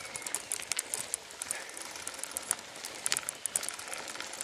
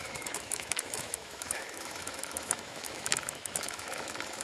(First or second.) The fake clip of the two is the second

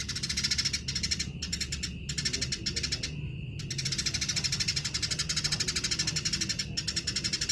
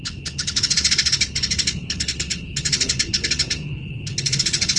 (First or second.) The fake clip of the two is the second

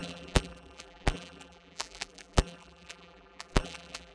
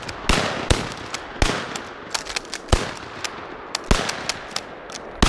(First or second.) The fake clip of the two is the first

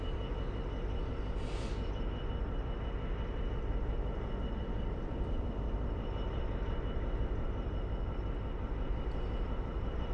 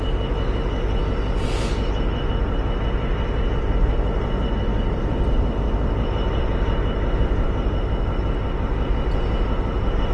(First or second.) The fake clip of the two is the first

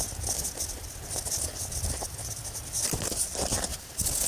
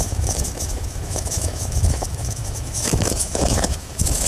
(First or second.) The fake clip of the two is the second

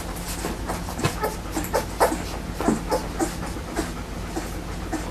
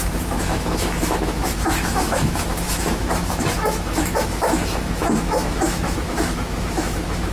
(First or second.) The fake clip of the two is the second